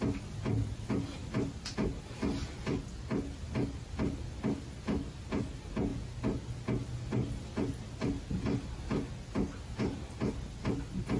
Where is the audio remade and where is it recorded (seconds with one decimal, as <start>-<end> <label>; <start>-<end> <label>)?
0.0-11.2 recorded